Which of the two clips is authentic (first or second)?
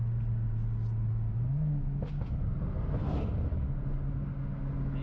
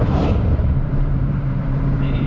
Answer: first